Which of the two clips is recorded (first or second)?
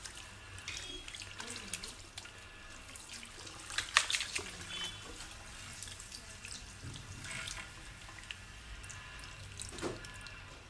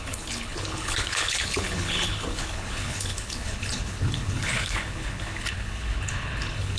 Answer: first